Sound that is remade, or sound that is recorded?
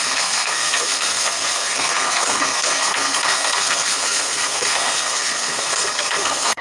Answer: remade